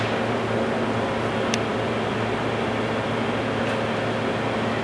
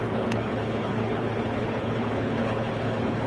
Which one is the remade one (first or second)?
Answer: second